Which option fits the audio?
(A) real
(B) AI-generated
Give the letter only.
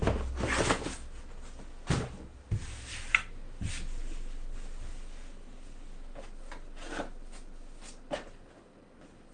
A